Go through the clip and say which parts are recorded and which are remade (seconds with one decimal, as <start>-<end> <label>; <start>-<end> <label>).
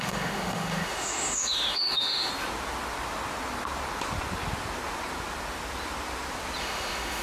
0.0-2.3 remade; 2.3-6.6 recorded; 6.6-7.2 remade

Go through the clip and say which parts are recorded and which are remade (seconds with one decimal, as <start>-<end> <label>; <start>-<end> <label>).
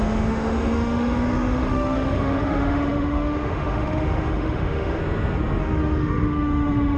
0.0-5.0 remade; 5.0-5.6 recorded; 5.6-7.0 remade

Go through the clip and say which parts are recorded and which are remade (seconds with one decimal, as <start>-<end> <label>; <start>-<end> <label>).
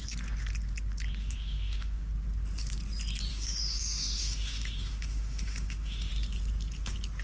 0.0-1.2 recorded; 1.2-2.1 remade; 2.1-3.3 recorded; 3.3-6.1 remade; 6.1-7.2 recorded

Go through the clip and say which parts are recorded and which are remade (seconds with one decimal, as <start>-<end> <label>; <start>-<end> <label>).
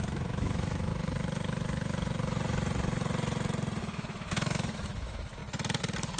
0.0-0.9 remade; 0.9-3.8 recorded; 3.8-5.4 remade; 5.4-6.2 recorded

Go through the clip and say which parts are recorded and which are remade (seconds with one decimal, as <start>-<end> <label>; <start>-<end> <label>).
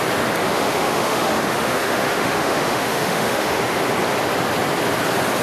0.0-0.4 recorded; 0.4-3.6 remade; 3.6-5.4 recorded